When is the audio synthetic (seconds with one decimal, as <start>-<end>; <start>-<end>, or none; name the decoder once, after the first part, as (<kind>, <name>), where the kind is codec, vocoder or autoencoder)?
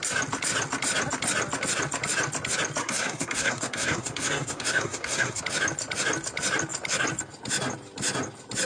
2.8-5.4 (codec, SNAC)